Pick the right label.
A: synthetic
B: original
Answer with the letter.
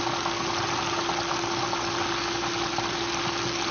B